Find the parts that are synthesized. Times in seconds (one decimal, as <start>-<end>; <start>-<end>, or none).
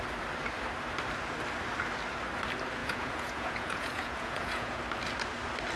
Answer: 2.8-4.8